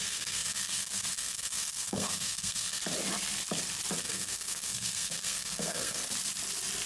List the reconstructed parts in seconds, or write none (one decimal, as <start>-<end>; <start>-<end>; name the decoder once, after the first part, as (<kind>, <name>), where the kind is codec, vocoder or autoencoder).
0.0-2.8 (codec, SNAC); 4.0-6.0